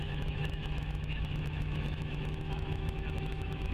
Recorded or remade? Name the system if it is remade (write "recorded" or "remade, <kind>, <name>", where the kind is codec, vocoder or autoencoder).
remade, autoencoder, DAC-VAE